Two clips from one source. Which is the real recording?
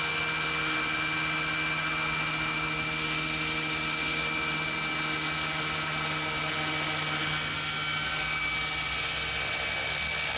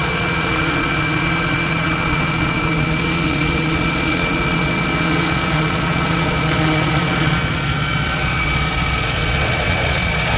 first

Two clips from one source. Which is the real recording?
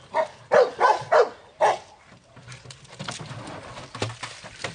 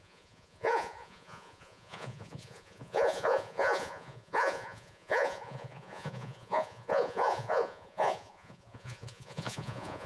first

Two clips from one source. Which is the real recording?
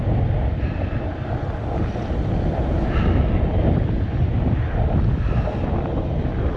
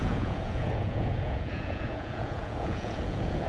first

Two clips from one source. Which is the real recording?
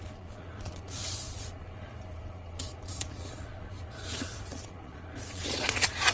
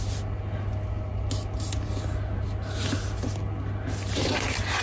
second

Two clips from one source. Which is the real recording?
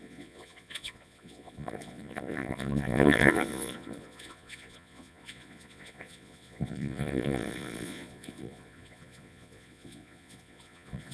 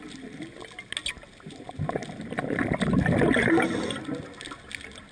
second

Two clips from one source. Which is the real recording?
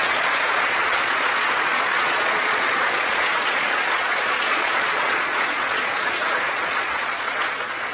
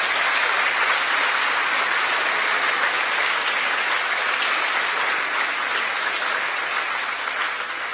second